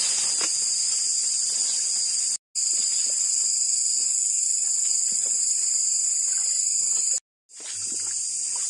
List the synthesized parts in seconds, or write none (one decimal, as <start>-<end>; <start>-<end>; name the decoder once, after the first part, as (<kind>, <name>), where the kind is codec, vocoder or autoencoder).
none